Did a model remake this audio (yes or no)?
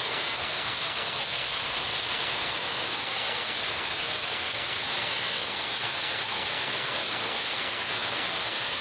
yes